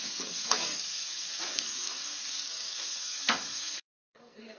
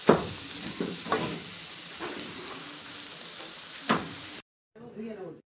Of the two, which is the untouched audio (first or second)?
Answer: second